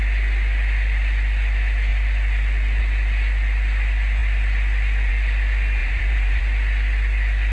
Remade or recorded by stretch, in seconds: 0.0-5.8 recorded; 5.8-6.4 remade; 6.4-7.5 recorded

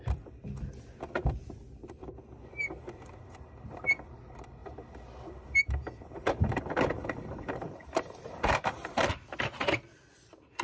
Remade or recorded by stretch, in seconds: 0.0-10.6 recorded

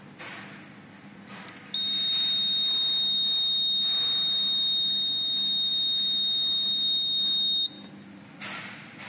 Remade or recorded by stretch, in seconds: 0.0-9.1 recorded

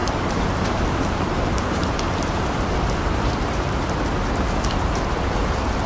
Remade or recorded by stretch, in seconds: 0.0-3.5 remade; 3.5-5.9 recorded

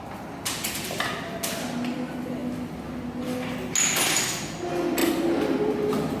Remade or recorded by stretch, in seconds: 0.0-6.2 recorded

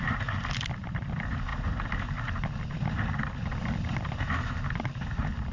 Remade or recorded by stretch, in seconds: 0.0-5.5 recorded

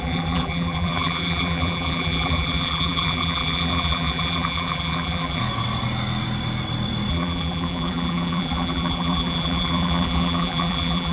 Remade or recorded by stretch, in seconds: 0.0-5.4 remade; 5.4-7.1 recorded; 7.1-11.1 remade